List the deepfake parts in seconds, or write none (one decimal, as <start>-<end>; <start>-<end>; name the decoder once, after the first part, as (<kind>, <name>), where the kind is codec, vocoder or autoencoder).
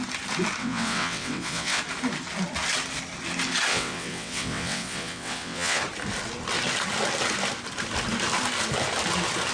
0.6-1.8 (vocoder, WaveNeXt); 3.7-5.8